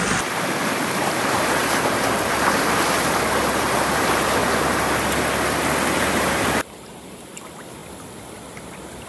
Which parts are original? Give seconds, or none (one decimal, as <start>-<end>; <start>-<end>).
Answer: 1.6-4.0; 4.4-6.3; 7.8-8.6